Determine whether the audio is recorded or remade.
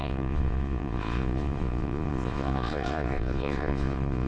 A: remade